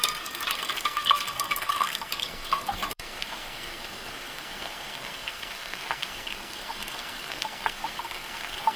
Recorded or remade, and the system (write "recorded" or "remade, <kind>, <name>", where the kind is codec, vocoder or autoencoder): remade, codec, SNAC